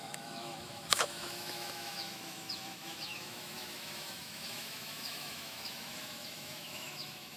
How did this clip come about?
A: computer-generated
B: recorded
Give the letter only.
A